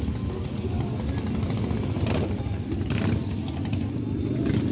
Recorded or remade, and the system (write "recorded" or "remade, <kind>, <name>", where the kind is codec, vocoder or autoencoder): recorded